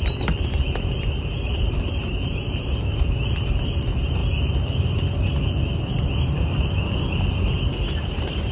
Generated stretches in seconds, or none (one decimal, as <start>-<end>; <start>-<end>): 0.0-4.2; 5.8-8.5